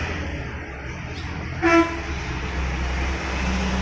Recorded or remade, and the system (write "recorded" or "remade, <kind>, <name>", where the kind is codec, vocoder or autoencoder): recorded